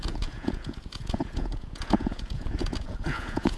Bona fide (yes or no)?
no